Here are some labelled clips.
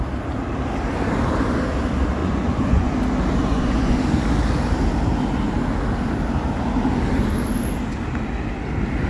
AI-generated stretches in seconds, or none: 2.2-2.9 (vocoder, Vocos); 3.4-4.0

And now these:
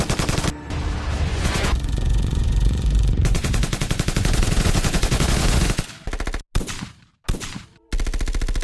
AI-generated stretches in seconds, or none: 1.3-5.8 (vocoder, Vocos)

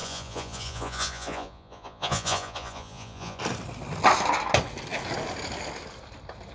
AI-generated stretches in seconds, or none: 0.0-3.4 (vocoder, Vocos)